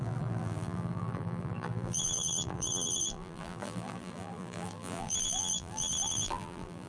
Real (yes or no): no